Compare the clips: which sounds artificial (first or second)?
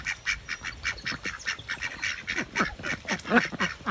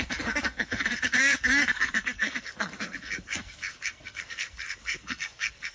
second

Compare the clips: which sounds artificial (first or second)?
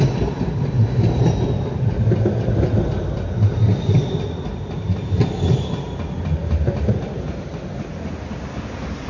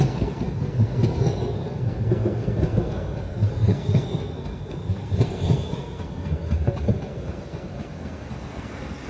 second